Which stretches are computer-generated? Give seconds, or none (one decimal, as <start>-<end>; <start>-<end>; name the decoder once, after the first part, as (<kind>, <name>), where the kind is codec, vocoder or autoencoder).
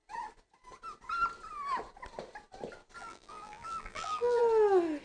3.0-4.4 (vocoder, BigVGAN v2)